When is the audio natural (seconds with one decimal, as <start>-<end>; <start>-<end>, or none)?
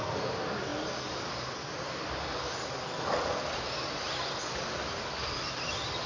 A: 0.0-6.1